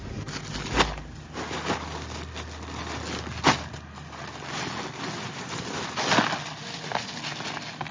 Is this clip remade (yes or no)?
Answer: no